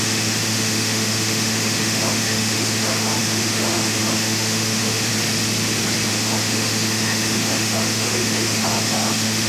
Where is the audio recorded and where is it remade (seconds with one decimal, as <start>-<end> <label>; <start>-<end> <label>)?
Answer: 0.0-5.1 remade; 5.1-6.1 recorded; 6.1-9.5 remade